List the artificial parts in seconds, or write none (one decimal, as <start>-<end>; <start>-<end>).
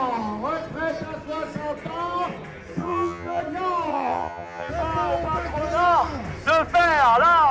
2.8-3.4; 3.9-4.7